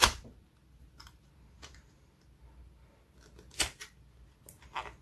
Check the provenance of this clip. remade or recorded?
recorded